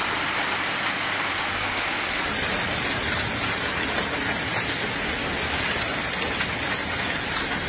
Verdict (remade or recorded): recorded